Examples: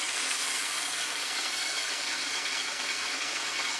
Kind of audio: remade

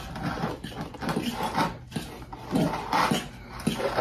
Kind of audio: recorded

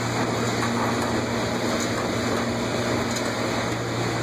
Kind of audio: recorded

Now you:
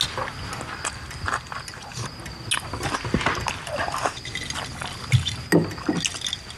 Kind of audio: recorded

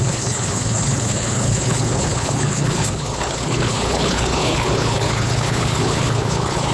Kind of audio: remade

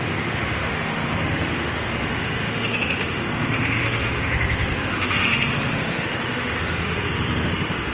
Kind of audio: remade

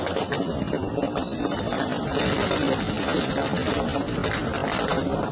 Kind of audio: recorded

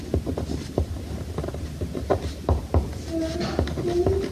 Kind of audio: recorded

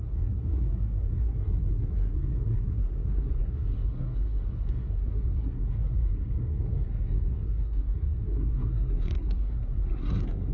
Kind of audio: remade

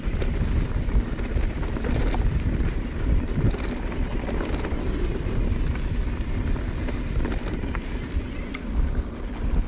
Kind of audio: recorded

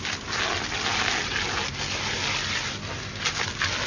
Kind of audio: recorded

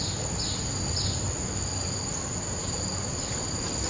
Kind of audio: recorded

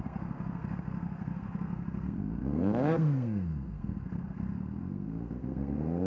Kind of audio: remade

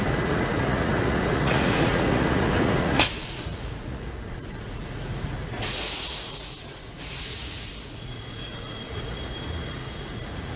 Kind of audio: remade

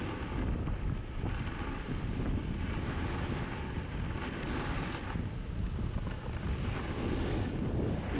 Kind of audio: recorded